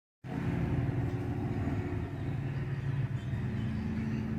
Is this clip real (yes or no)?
yes